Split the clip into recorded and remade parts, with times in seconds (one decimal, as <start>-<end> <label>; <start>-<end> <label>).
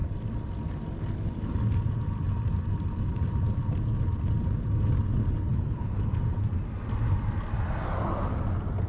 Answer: 0.0-5.5 recorded; 5.5-6.1 remade; 6.1-8.9 recorded